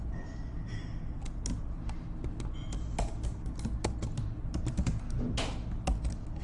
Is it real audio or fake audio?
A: real